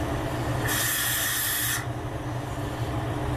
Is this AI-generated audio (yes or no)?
no